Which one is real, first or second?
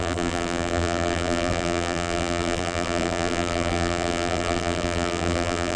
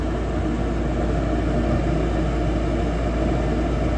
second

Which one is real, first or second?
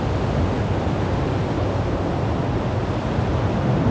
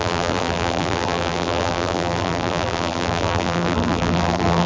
first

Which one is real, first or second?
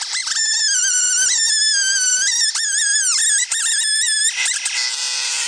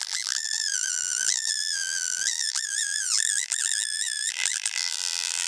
first